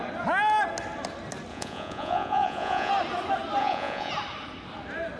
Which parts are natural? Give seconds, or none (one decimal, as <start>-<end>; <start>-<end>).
0.0-1.5; 2.9-3.6; 4.1-5.2